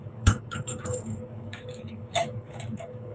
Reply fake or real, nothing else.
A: fake